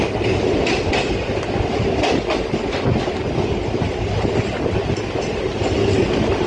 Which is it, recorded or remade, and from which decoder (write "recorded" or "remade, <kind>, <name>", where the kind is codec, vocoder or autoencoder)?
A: recorded